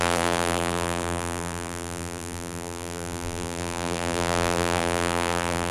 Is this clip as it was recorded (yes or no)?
no